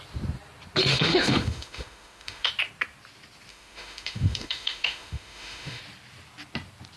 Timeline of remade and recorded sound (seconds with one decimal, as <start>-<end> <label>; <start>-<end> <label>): 0.0-0.9 recorded; 0.9-2.5 remade; 2.5-3.5 recorded; 3.5-5.8 remade; 5.8-7.0 recorded

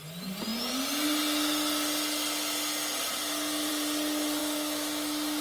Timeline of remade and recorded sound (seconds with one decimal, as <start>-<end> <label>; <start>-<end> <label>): 0.0-4.4 recorded; 4.4-5.4 remade

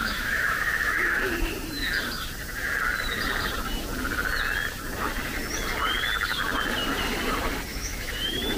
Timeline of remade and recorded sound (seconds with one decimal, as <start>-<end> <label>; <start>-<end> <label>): 0.0-1.2 remade; 1.2-7.7 recorded; 7.7-8.6 remade

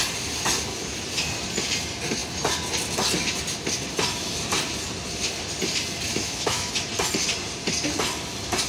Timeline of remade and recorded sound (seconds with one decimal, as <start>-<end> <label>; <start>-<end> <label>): 0.0-6.1 recorded; 6.1-6.7 remade; 6.7-8.7 recorded

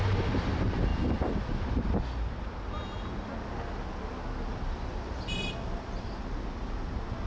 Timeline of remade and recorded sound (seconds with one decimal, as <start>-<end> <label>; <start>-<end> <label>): 0.0-7.3 recorded

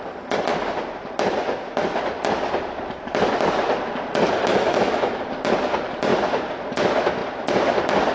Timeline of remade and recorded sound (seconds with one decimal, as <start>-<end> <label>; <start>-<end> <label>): 0.0-4.5 recorded; 4.5-5.2 remade; 5.2-8.1 recorded

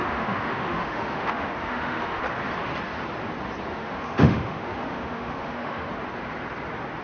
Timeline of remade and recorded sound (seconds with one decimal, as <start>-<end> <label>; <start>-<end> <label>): 0.0-2.2 remade; 2.2-3.7 recorded; 3.7-5.9 remade; 5.9-7.0 recorded